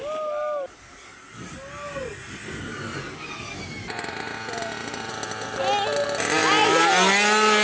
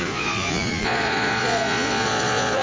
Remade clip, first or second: second